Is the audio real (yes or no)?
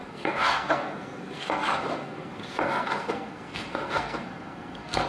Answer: no